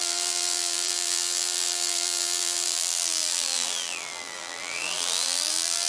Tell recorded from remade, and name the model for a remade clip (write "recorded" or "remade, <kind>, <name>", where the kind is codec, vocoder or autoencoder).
remade, vocoder, BigVGAN v2